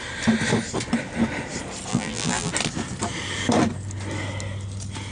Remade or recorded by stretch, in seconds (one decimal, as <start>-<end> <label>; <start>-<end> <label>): 0.0-1.9 recorded; 1.9-2.5 remade; 2.5-5.1 recorded